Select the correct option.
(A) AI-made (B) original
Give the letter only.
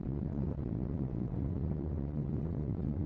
A